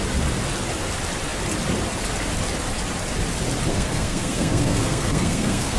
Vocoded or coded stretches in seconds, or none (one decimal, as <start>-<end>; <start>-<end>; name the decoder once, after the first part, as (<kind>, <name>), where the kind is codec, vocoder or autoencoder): 3.7-5.8 (codec, SNAC)